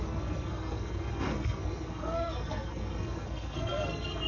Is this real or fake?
fake